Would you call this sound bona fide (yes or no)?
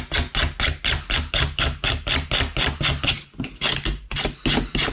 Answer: yes